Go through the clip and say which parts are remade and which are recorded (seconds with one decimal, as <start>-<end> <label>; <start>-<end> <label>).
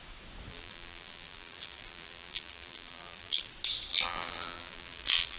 0.0-0.5 recorded; 0.5-3.5 remade; 3.5-3.9 recorded; 3.9-5.4 remade